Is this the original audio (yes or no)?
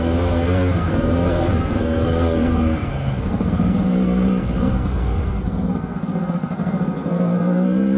no